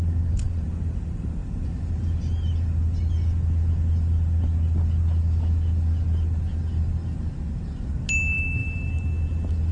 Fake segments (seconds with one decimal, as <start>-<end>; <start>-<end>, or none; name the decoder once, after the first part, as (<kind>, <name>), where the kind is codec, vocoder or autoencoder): 7.0-8.0 (vocoder, BigVGAN v2)